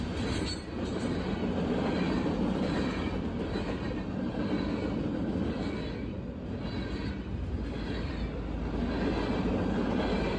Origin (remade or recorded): recorded